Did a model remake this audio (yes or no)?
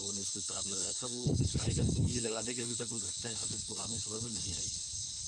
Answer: yes